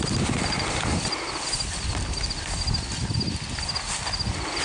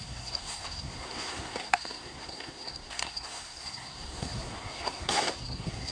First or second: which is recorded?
first